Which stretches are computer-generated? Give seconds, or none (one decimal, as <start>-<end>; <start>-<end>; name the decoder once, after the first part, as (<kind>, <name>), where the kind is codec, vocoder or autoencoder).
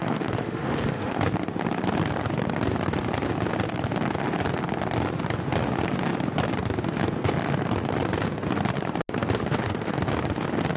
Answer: 0.0-1.2 (autoencoder, DAC-VAE); 9.5-10.0